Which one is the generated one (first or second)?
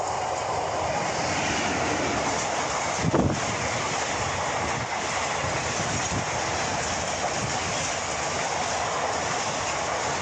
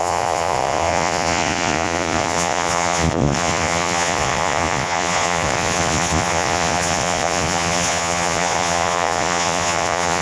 second